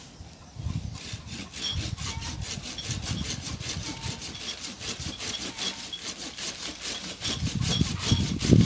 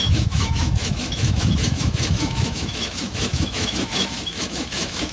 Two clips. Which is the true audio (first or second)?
first